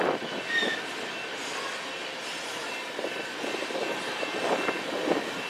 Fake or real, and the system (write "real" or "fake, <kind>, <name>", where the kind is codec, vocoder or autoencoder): real